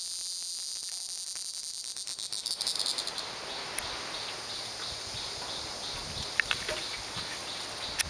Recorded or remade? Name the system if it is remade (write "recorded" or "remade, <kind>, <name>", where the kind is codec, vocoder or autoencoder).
recorded